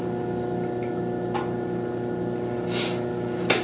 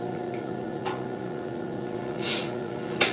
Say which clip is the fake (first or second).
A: second